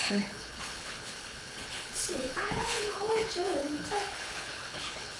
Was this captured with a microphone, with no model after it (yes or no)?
no